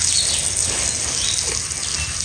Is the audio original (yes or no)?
yes